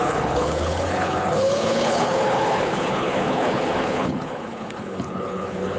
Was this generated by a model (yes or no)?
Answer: yes